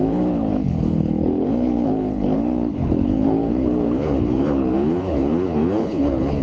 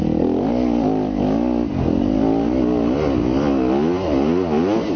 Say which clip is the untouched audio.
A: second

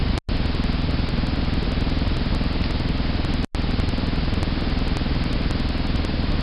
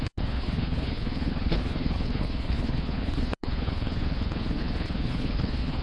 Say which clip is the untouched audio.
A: first